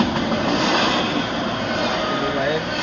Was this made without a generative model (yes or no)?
yes